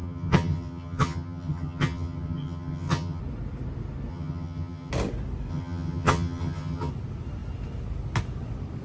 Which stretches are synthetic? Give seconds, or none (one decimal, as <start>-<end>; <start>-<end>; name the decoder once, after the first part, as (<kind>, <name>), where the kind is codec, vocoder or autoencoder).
0.0-3.2 (vocoder, HiFi-GAN); 4.1-4.9; 5.5-6.9